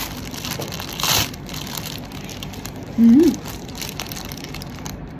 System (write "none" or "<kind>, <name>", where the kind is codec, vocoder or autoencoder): vocoder, BigVGAN v2